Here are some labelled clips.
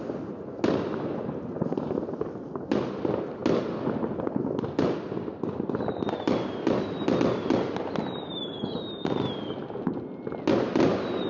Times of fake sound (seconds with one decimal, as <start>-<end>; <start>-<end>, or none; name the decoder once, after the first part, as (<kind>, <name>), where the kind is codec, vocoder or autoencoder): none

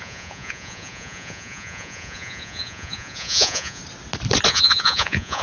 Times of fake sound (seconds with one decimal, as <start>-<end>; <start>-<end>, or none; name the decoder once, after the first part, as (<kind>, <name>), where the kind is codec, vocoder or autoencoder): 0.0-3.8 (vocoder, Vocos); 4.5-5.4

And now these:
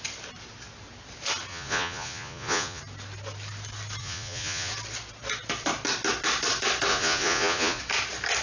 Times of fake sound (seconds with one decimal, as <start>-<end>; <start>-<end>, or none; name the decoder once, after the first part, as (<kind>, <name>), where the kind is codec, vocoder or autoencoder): 1.5-2.8 (vocoder, Vocos); 4.0-4.7; 6.9-7.8

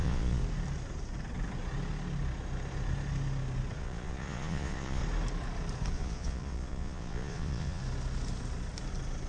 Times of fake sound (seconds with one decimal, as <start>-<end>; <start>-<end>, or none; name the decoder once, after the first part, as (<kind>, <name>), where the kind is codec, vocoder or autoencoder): 0.0-0.4 (vocoder, Vocos); 3.8-5.0; 5.9-7.8

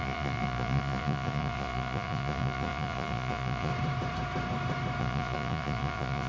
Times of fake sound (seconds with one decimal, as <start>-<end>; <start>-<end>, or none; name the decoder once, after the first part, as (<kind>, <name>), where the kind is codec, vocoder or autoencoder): 0.0-3.7 (vocoder, Vocos); 5.0-6.3

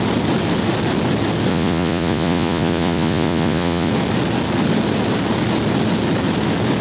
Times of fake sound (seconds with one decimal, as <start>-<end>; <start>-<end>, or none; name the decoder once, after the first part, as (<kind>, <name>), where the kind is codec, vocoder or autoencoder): 1.5-3.9 (vocoder, Vocos)